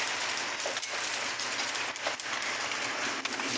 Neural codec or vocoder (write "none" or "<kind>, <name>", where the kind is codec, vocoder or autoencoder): none